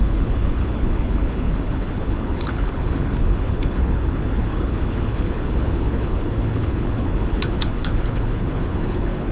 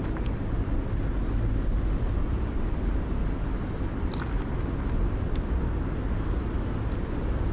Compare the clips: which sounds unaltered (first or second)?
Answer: second